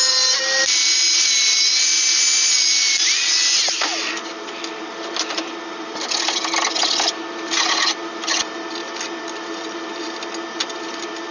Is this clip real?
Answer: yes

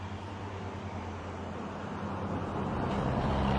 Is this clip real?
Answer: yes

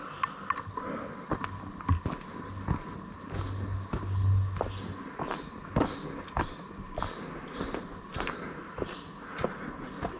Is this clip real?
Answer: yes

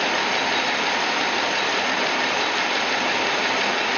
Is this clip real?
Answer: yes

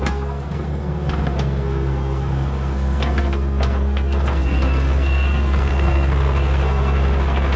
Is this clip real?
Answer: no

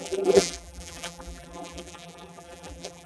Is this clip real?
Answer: no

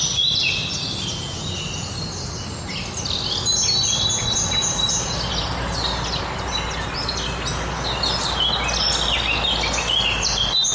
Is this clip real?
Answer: yes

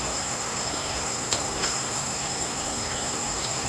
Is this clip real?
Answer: no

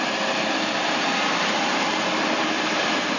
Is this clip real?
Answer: yes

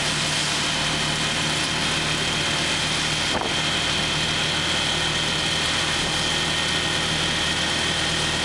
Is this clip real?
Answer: yes